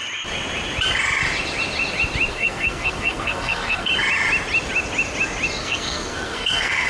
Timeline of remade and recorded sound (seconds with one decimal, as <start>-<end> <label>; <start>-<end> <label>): 0.0-2.3 recorded; 2.3-3.9 remade; 3.9-5.6 recorded; 5.6-6.9 remade